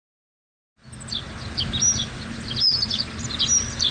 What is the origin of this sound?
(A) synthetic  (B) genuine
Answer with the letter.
B